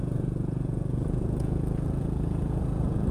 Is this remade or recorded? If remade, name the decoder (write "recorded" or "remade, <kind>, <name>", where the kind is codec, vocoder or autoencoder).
remade, vocoder, Vocos